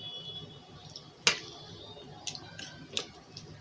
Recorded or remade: recorded